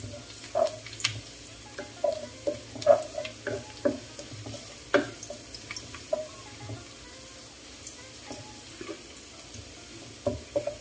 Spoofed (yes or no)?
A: no